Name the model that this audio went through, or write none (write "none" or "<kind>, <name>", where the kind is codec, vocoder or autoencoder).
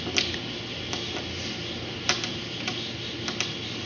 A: none